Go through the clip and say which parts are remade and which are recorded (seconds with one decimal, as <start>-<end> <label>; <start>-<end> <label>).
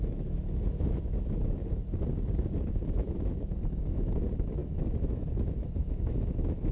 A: 0.0-1.6 remade; 1.6-3.1 recorded; 3.1-6.7 remade